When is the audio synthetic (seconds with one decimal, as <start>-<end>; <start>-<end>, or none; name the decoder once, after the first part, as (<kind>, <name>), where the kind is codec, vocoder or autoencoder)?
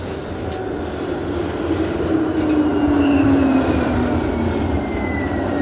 none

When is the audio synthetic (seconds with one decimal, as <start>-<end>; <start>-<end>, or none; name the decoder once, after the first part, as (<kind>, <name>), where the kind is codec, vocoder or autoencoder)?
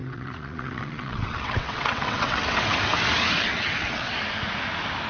0.0-2.8 (vocoder, WaveNeXt); 3.5-4.1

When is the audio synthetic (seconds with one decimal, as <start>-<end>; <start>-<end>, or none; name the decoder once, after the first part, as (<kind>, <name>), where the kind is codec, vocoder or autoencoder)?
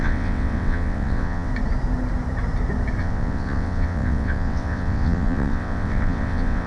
0.0-1.5 (vocoder, WaveNeXt); 3.0-6.7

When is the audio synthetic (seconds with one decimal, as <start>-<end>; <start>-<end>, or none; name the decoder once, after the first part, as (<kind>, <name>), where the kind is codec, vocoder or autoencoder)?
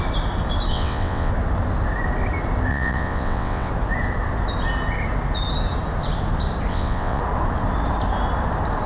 0.7-1.3 (vocoder, WaveNeXt); 2.7-3.7; 6.7-7.2